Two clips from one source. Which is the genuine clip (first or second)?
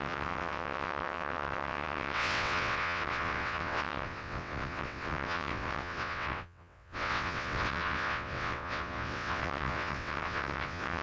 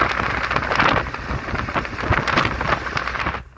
second